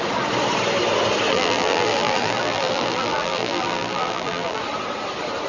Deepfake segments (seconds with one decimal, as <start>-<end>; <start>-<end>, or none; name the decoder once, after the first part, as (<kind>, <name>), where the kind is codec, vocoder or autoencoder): 1.3-4.6 (vocoder, BigVGAN v2)